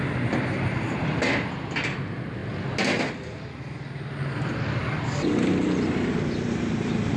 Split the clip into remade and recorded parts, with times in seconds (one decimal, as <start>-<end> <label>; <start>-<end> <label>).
0.0-7.2 recorded